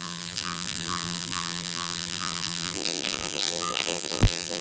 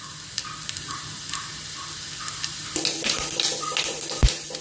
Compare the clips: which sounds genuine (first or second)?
second